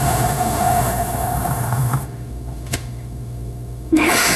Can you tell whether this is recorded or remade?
remade